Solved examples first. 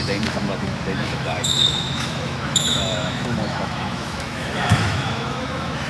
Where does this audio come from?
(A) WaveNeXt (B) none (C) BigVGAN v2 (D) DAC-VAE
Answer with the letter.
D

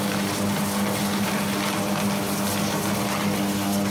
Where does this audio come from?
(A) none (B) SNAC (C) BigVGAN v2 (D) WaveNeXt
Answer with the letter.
A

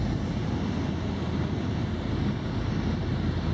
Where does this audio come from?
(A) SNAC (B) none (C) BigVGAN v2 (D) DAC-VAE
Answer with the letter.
B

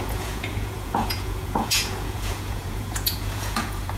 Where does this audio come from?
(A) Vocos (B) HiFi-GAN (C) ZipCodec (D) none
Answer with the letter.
A